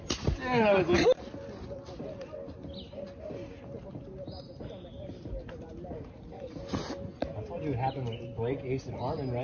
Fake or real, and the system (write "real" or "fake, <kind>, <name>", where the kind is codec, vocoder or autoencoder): real